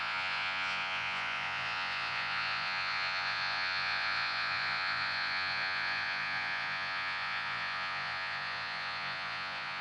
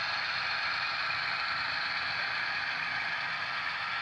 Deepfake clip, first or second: first